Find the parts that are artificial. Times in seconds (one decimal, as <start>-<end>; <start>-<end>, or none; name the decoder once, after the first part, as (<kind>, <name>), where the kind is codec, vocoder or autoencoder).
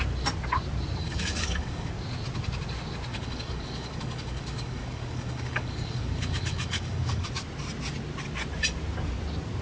1.0-1.9 (codec, DAC); 3.1-7.3